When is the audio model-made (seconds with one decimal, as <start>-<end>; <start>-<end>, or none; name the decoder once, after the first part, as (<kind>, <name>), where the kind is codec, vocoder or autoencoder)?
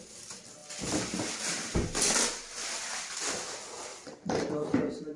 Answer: 3.9-5.2 (vocoder, BigVGAN v2)